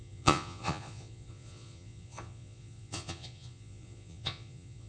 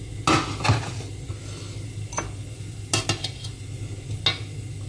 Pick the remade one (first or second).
first